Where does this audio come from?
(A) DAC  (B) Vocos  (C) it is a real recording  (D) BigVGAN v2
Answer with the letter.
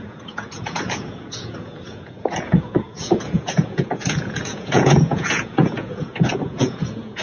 B